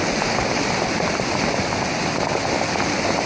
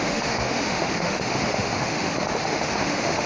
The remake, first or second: second